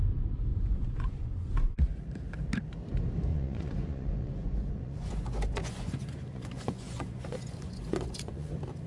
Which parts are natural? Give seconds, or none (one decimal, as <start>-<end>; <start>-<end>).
0.0-0.5; 1.5-3.3; 8.5-8.9